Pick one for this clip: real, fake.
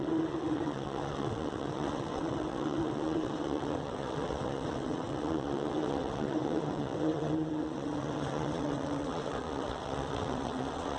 fake